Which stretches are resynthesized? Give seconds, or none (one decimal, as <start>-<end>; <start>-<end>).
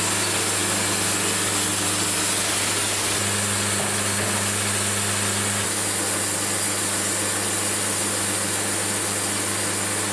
none